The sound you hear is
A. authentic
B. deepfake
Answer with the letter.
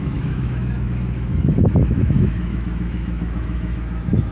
B